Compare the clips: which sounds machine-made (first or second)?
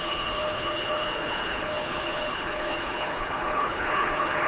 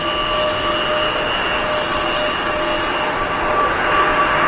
first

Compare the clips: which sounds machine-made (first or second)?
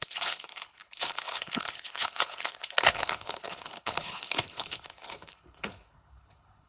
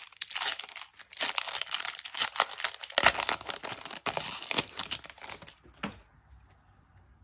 first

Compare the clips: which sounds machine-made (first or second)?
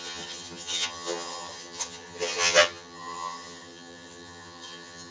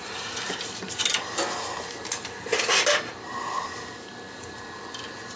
first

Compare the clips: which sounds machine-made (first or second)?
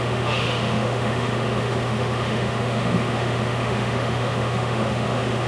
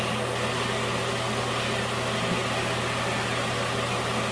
first